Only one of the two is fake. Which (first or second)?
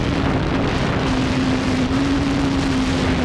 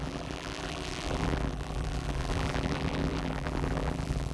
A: second